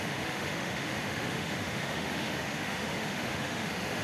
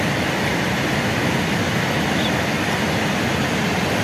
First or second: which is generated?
first